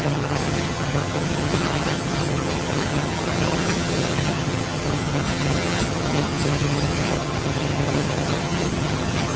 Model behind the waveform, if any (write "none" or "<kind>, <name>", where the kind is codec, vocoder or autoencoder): vocoder, HiFi-GAN